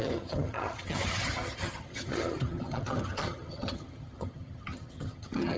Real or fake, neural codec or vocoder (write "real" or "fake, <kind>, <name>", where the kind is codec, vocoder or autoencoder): fake, vocoder, HiFi-GAN